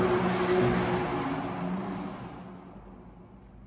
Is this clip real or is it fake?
real